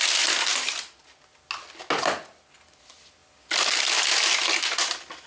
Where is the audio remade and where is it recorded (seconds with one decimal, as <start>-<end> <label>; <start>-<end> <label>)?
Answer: 0.0-5.3 recorded